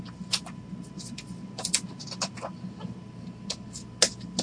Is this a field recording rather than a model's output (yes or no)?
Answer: yes